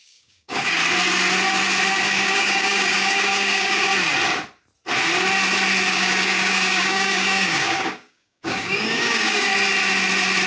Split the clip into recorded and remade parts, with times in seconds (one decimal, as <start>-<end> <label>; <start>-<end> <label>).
0.0-0.8 remade; 0.8-1.9 recorded; 1.9-3.9 remade; 3.9-5.9 recorded; 5.9-9.5 remade; 9.5-10.5 recorded